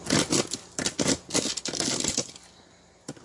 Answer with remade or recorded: recorded